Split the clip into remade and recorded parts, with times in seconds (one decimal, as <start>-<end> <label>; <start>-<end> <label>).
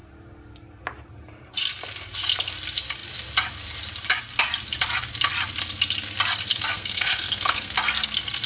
0.0-6.5 recorded; 6.5-7.7 remade; 7.7-8.5 recorded